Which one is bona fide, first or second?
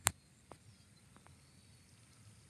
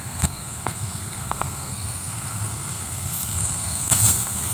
first